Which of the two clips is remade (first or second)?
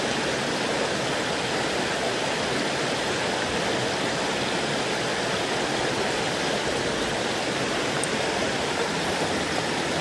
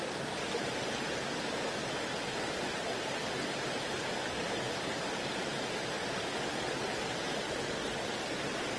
first